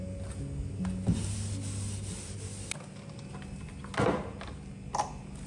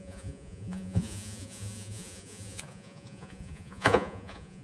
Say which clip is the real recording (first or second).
first